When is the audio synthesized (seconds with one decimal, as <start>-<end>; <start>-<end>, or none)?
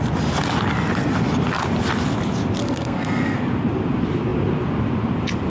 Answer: 2.6-3.4